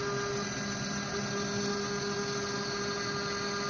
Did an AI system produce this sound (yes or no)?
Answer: no